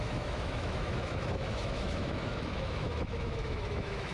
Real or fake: fake